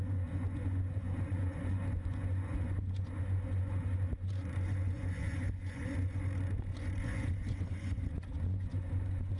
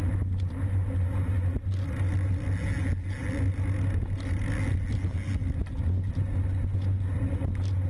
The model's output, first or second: first